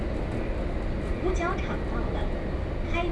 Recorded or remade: recorded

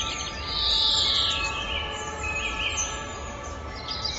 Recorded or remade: recorded